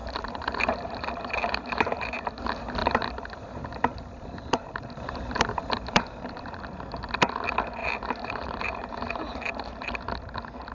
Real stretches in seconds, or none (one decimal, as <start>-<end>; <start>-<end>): 2.3-2.8; 6.6-7.8; 9.9-10.7